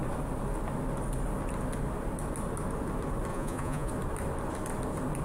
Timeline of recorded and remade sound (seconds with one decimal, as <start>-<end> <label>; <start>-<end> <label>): 0.0-3.3 recorded; 3.3-3.9 remade; 3.9-5.2 recorded